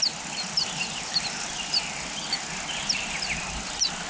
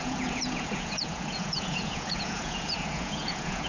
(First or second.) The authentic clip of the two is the first